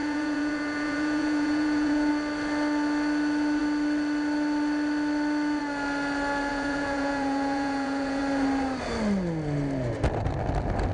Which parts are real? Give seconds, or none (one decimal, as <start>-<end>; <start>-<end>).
2.1-6.5; 8.2-10.9